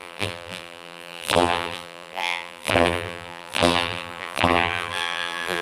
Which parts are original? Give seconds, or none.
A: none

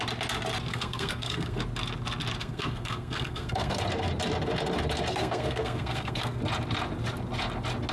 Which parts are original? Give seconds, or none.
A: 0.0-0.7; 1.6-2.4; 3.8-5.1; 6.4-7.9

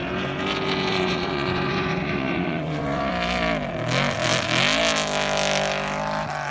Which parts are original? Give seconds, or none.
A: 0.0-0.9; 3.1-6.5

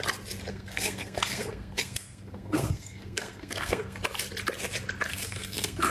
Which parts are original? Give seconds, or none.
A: 0.0-0.5; 4.0-5.1

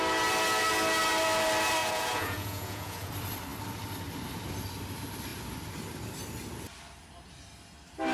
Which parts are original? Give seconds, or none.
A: 0.0-1.8; 3.1-8.1